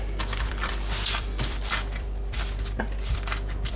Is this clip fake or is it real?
fake